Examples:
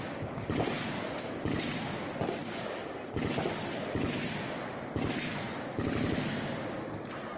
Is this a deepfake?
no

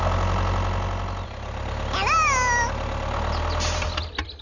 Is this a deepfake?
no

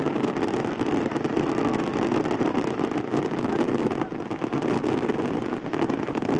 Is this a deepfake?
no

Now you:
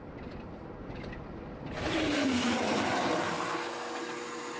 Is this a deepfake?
no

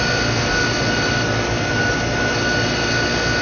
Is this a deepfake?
no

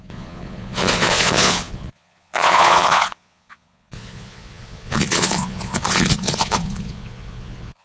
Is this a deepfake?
yes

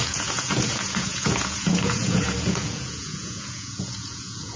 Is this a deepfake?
yes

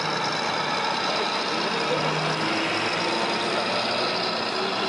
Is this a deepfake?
no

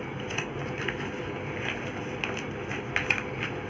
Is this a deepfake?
no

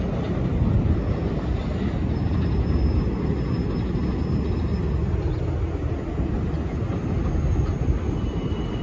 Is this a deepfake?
no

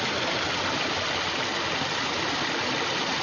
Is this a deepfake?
no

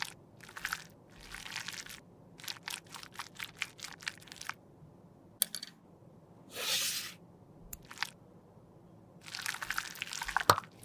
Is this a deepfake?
no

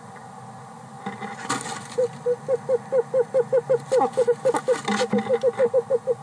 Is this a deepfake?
no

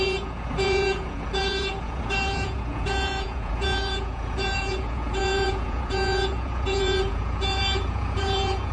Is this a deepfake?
yes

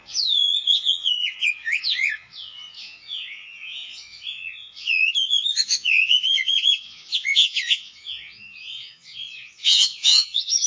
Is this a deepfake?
yes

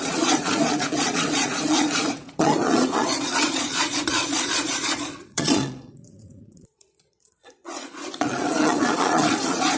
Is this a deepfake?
yes